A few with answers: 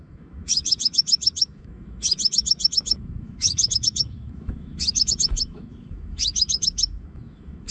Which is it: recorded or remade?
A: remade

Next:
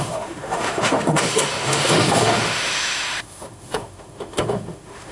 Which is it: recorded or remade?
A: remade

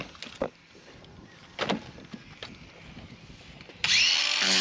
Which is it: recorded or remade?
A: recorded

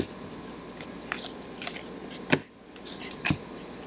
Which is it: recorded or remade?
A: recorded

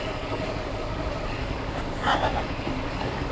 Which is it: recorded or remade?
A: remade